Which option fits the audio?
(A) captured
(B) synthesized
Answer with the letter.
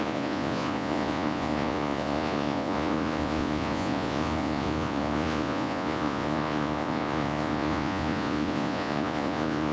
B